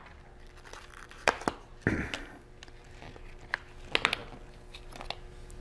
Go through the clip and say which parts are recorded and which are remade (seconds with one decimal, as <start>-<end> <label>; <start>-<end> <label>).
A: 0.0-5.6 recorded